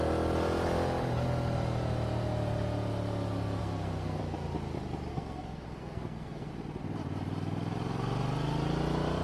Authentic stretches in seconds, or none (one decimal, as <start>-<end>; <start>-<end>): 0.0-3.6; 4.2-5.1; 6.5-9.2